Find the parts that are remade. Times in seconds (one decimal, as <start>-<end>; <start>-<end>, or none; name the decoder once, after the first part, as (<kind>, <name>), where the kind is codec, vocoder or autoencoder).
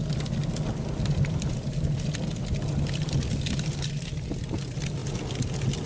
none